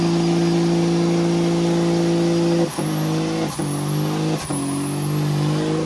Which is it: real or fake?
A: real